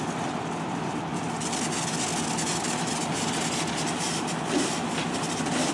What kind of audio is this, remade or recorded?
recorded